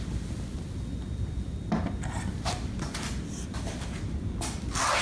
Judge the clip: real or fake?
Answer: real